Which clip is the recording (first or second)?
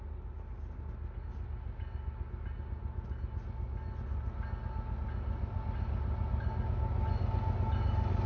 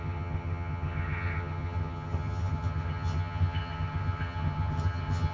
first